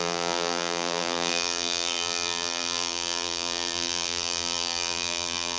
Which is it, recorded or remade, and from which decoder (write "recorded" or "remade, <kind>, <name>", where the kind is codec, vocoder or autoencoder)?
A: remade, vocoder, BigVGAN v2